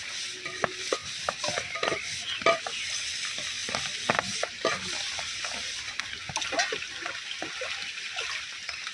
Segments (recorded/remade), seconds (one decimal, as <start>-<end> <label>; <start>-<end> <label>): 0.0-8.9 recorded